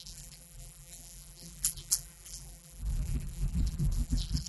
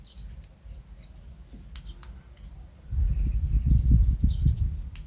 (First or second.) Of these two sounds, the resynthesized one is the first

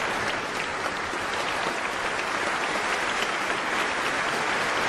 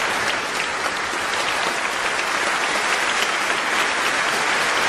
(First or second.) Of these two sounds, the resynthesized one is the first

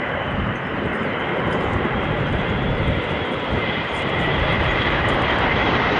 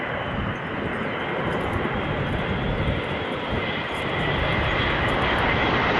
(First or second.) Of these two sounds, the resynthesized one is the first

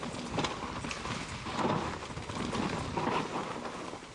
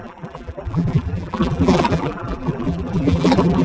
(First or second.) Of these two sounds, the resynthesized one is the second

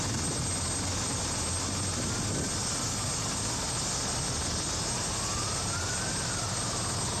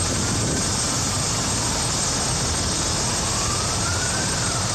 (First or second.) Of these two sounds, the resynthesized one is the second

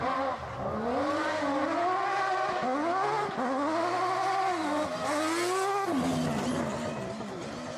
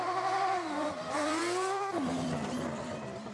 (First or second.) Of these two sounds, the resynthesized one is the second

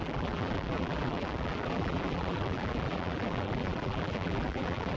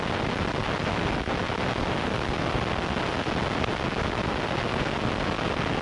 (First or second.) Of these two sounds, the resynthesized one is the first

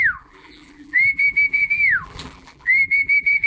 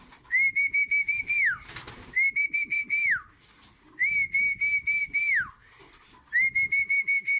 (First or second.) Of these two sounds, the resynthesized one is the first